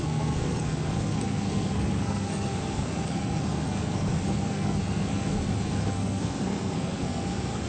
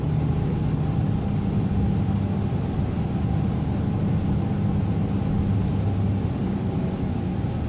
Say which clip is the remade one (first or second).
first